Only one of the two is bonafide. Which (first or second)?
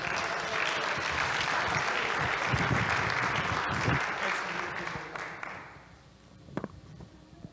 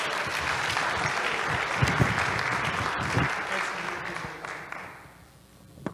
second